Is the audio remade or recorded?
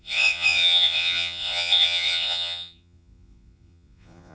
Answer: remade